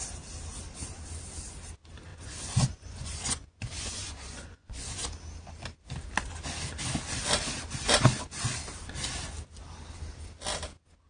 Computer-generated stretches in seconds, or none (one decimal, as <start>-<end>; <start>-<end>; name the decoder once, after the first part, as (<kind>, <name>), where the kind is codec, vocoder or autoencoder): 2.1-5.1 (vocoder, Vocos)